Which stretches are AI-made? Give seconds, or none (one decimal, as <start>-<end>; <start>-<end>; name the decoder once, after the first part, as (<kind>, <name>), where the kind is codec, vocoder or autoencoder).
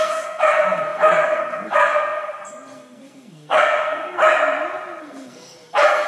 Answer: 0.0-4.2 (codec, SNAC); 5.0-6.1